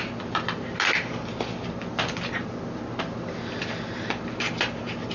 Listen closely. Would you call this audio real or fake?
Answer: real